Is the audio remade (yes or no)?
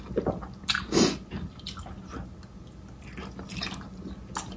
no